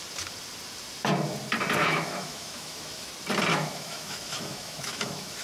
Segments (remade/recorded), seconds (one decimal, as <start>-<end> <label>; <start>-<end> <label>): 0.0-1.8 recorded; 1.8-3.1 remade; 3.1-3.5 recorded; 3.5-5.4 remade